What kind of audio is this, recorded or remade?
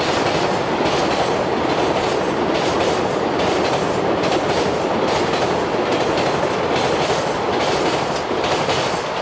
recorded